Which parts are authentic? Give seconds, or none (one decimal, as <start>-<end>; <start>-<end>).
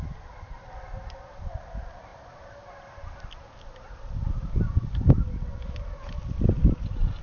0.0-7.2